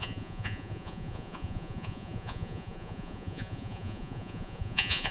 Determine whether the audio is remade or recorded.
remade